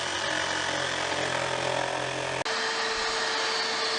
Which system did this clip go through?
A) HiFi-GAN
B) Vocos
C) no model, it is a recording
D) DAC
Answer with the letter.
C